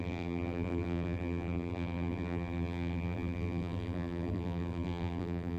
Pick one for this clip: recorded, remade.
remade